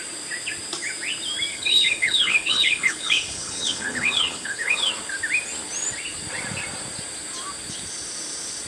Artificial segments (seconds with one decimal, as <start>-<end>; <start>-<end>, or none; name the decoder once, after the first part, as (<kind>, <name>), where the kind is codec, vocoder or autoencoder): 1.5-4.9 (codec, HILCodec)